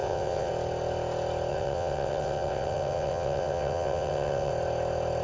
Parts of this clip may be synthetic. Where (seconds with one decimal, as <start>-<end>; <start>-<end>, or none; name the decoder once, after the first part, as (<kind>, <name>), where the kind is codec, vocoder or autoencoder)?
0.0-0.5 (vocoder, WaveNeXt); 1.5-4.5